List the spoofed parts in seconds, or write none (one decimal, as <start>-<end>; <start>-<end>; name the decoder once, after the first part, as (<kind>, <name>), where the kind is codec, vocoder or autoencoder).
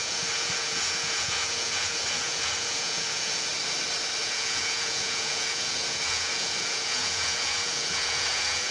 0.0-3.5 (vocoder, Vocos); 4.2-8.7